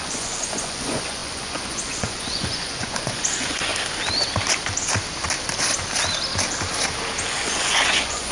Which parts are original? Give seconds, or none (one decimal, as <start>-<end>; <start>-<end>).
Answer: 3.7-7.3